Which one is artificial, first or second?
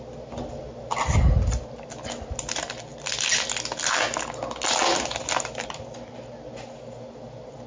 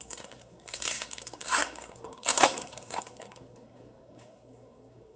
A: second